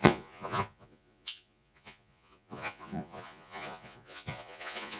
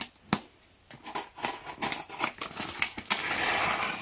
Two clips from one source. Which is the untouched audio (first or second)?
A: second